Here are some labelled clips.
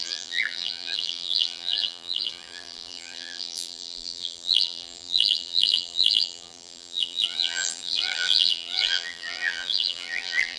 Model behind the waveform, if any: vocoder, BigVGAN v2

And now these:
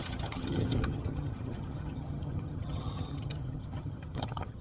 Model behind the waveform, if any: vocoder, HiFi-GAN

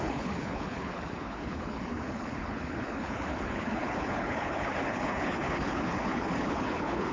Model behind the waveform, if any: codec, HILCodec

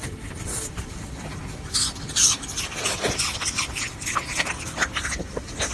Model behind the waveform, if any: vocoder, BigVGAN v2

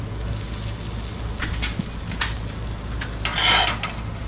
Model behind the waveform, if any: none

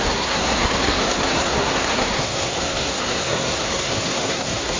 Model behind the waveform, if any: codec, SNAC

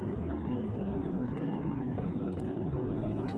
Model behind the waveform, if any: codec, SNAC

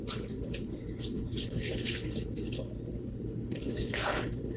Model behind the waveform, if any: codec, HILCodec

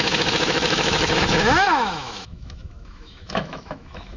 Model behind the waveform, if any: autoencoder, DAC-VAE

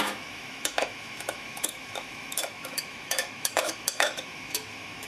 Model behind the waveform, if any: autoencoder, DAC-VAE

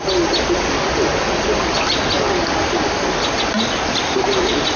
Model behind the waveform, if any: none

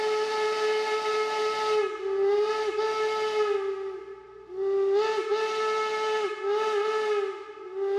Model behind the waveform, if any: none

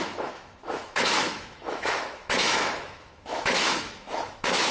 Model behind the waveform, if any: autoencoder, DAC-VAE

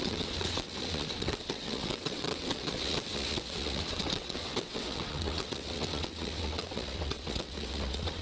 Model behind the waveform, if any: vocoder, WaveNeXt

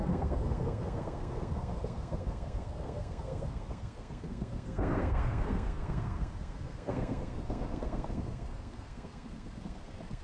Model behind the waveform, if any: codec, SNAC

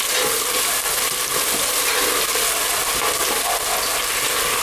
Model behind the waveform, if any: none